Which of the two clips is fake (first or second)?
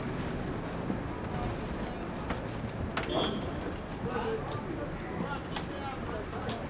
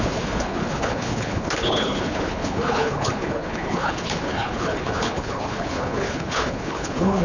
second